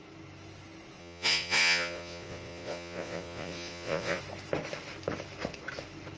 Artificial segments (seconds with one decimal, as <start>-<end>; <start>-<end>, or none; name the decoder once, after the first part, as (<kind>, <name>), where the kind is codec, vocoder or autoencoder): 1.0-4.2 (vocoder, Vocos)